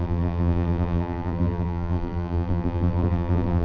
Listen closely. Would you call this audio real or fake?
fake